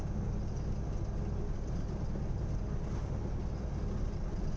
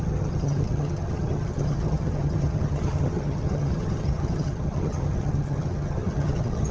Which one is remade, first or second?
second